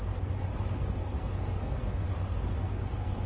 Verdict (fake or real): fake